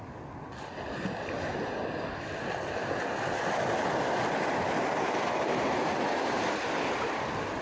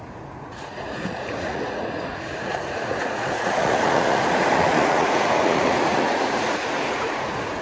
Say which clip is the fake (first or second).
second